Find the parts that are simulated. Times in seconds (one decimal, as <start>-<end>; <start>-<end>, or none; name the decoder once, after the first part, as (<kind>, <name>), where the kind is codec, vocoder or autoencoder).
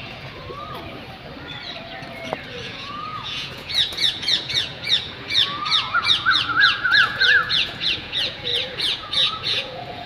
0.0-0.4 (vocoder, Vocos); 2.6-10.1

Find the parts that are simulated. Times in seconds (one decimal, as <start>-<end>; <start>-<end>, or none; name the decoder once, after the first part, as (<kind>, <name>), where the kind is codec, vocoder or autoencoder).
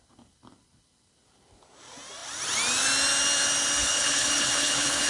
3.8-5.1 (codec, HILCodec)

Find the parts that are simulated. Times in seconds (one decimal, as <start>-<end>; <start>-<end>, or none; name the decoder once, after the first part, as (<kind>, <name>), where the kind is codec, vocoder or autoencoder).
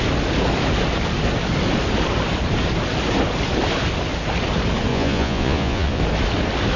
4.9-6.0 (vocoder, Vocos)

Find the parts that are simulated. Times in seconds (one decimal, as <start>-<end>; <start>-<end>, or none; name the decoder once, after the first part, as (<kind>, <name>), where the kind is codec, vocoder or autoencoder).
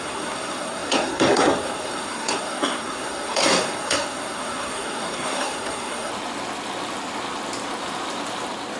0.0-6.1 (codec, SNAC)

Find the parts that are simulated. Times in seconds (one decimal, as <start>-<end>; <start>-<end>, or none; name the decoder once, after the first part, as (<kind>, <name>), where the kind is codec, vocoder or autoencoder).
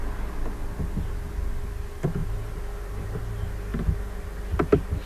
2.2-3.2 (vocoder, BigVGAN v2)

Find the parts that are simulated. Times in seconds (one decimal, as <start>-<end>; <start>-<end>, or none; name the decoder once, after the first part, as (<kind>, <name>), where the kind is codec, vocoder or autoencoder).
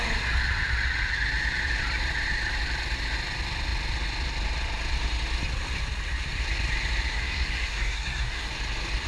7.1-8.5 (codec, SNAC)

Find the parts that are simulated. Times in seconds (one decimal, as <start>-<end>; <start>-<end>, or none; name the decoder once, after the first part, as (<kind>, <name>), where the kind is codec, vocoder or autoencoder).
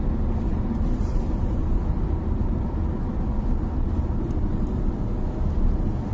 0.5-3.1 (vocoder, BigVGAN v2)